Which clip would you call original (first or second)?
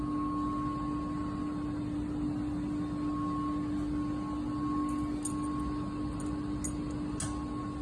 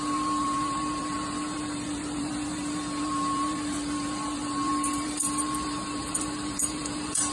first